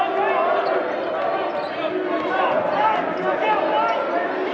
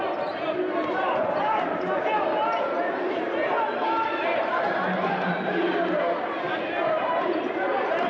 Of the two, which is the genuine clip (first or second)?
first